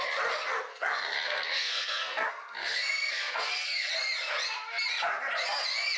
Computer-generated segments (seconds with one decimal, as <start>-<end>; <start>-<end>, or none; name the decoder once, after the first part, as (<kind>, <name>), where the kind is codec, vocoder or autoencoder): 0.7-3.9 (codec, SNAC)